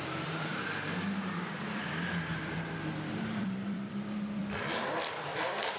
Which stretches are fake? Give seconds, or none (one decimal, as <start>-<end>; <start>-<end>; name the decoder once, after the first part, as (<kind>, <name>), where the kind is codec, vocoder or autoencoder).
0.0-0.5 (vocoder, BigVGAN v2); 1.3-4.4; 5.1-5.8